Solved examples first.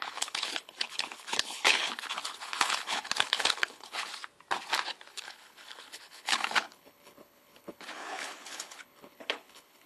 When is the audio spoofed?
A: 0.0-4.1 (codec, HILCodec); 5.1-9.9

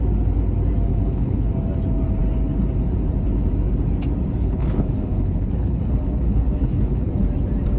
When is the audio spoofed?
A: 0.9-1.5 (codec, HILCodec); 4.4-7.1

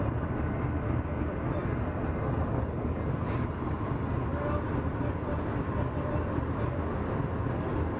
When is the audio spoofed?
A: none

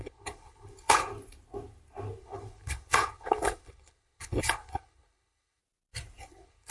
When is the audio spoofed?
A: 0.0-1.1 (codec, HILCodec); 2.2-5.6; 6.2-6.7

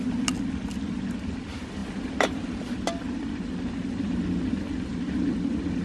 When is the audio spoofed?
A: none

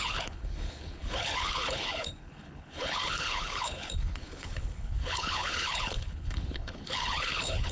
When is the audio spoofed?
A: 0.0-7.7 (codec, HILCodec)

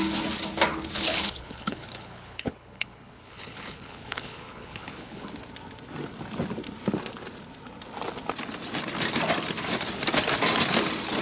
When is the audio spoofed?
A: 0.7-5.3 (codec, HILCodec)